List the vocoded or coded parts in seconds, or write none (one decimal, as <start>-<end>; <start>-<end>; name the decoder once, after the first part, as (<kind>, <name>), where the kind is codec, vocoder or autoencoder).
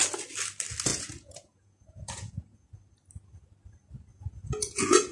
0.9-2.7 (vocoder, Vocos); 4.1-5.1